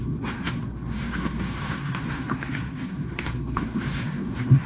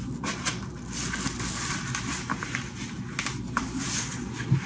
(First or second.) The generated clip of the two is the first